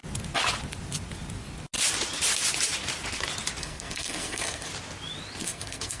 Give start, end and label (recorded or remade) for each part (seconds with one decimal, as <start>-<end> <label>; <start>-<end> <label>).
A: 0.0-3.6 recorded; 3.6-4.7 remade; 4.7-5.4 recorded; 5.4-6.0 remade